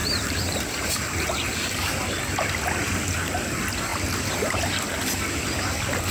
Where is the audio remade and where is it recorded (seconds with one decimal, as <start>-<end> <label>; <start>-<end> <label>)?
0.0-1.9 remade; 1.9-3.9 recorded; 3.9-4.4 remade; 4.4-6.1 recorded